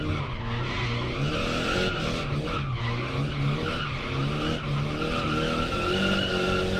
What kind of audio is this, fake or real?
real